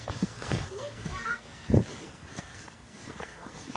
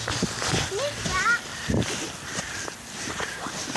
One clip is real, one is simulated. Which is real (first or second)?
second